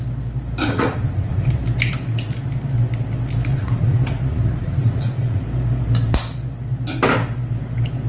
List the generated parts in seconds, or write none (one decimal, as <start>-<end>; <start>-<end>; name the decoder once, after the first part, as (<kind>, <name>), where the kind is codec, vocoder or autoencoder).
0.6-1.6 (vocoder, Vocos); 3.5-5.4